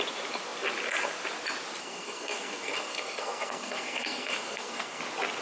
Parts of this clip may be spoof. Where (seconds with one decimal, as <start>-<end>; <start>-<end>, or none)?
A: 1.8-5.0